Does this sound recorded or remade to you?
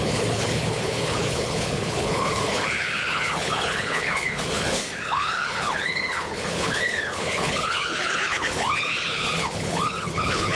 remade